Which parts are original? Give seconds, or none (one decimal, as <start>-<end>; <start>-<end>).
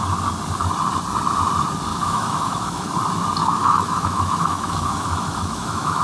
0.0-1.9; 2.9-3.4